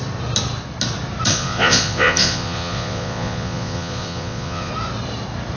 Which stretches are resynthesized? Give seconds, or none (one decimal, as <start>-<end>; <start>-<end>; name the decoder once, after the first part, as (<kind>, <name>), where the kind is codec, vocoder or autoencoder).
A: 1.3-4.7 (vocoder, Vocos)